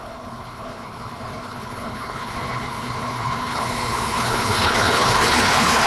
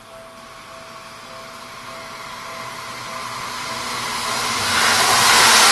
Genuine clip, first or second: second